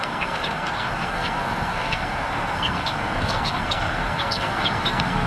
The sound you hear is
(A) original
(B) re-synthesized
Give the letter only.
B